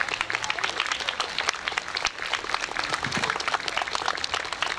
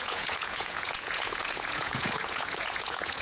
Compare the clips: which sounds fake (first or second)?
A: second